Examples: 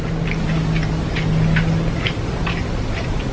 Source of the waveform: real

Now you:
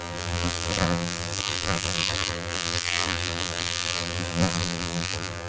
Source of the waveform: fake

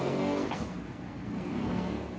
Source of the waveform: fake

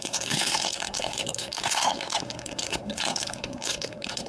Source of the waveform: fake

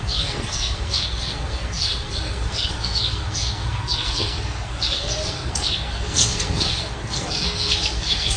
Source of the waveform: fake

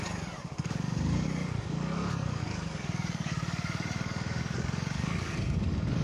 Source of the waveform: fake